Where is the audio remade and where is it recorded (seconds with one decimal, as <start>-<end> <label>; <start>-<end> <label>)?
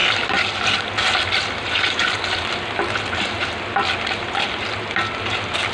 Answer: 0.0-5.7 recorded